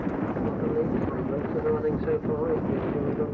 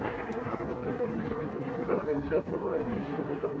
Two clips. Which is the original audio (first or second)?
first